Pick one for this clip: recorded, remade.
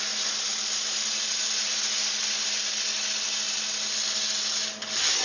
recorded